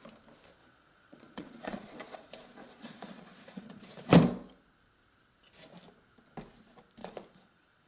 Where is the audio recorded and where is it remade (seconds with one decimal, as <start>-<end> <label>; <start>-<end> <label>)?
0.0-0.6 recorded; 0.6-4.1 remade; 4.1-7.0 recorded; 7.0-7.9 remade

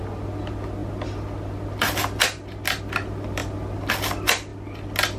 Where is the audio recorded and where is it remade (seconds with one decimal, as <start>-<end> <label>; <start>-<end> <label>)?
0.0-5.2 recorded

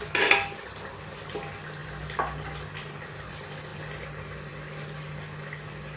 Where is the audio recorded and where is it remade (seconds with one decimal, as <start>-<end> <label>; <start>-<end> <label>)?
0.0-6.0 recorded

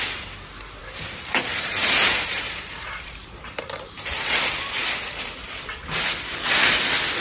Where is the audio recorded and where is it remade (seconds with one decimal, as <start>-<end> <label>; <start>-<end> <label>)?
0.0-0.8 recorded; 0.8-4.3 remade; 4.3-7.2 recorded

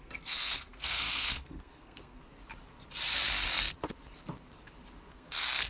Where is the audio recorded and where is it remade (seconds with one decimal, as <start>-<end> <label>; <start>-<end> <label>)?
0.0-2.2 remade; 2.2-5.1 recorded; 5.1-5.7 remade

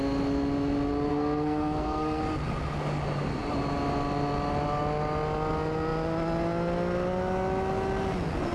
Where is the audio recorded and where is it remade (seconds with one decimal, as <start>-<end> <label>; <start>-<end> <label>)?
0.0-1.1 recorded; 1.1-2.2 remade; 2.2-8.5 recorded

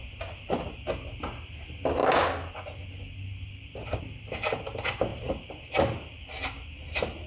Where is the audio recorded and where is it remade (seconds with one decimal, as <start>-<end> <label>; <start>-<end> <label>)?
0.0-7.3 recorded

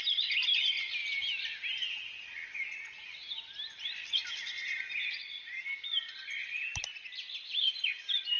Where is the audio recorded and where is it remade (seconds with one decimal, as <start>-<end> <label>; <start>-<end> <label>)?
0.0-8.4 recorded